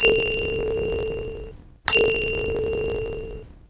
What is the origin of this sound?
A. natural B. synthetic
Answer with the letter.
A